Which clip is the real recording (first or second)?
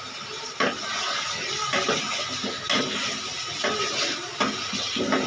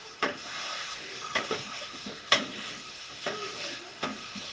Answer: first